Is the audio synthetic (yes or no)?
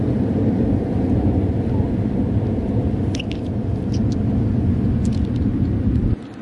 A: no